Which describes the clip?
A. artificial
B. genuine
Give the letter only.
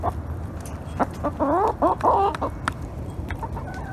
B